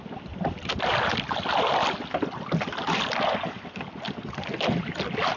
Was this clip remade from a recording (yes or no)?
no